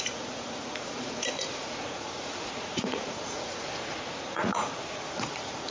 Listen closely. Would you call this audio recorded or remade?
remade